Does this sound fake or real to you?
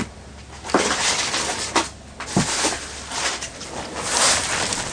real